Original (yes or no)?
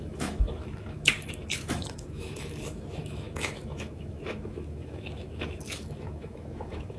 no